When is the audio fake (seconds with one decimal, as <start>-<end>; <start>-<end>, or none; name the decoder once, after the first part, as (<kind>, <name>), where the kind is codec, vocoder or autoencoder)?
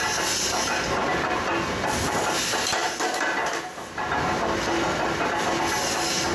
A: none